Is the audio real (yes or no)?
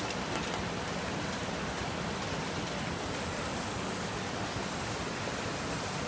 no